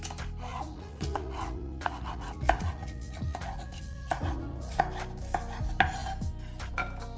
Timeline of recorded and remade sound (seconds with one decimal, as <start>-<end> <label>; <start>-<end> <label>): 0.0-0.5 recorded; 0.5-4.8 remade; 4.8-7.2 recorded